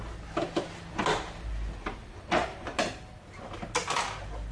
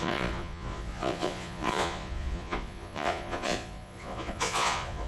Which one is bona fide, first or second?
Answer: first